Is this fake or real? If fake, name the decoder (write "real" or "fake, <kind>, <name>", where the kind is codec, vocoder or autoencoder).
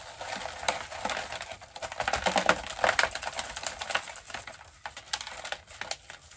real